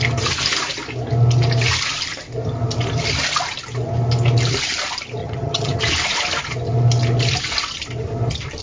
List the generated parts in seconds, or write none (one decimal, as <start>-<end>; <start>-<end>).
5.2-5.8